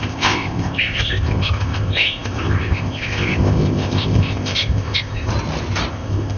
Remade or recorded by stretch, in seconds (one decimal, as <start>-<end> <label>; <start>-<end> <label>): 0.0-5.3 remade; 5.3-5.9 recorded; 5.9-6.4 remade

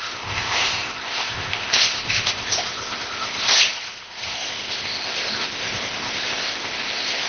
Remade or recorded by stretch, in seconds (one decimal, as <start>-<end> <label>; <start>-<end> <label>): 0.0-7.3 remade

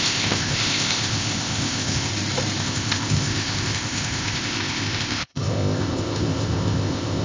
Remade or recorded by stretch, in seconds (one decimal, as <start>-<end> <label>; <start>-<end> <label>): 0.0-2.1 remade; 2.1-2.6 recorded; 2.6-7.2 remade

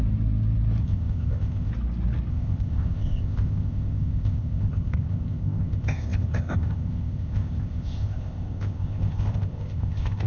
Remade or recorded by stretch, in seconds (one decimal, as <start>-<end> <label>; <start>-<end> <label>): 0.0-0.8 recorded; 0.8-1.7 remade; 1.7-2.3 recorded; 2.3-10.3 remade

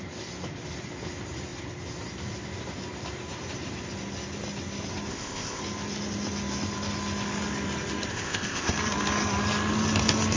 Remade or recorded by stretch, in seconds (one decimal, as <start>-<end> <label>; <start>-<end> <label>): 0.0-5.1 recorded; 5.1-5.6 remade; 5.6-8.1 recorded; 8.1-8.7 remade; 8.7-10.4 recorded